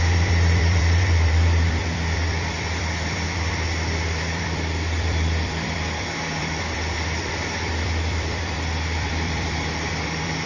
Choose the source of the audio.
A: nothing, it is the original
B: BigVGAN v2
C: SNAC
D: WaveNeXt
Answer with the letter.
B